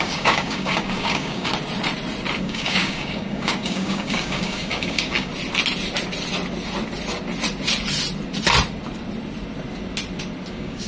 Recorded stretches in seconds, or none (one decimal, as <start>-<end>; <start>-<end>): 1.5-2.4; 5.3-10.5